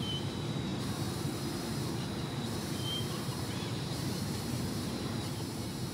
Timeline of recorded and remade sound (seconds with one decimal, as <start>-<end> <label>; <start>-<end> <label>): 0.0-5.9 remade